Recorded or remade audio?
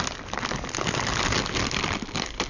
recorded